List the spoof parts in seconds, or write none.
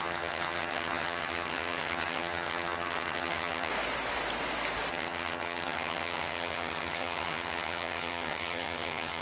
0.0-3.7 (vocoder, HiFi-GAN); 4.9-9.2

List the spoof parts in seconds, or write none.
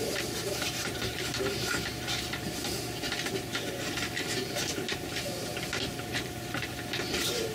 0.0-2.6 (vocoder, BigVGAN v2); 4.6-7.5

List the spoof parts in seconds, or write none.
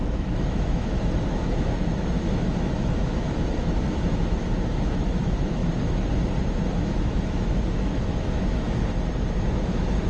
0.0-5.6 (autoencoder, DAC-VAE); 6.7-8.8; 9.4-10.1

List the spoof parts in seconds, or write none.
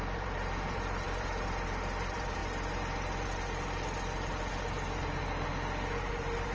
0.0-2.4 (vocoder, BigVGAN v2); 6.1-6.5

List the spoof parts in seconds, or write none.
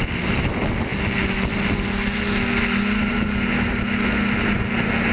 none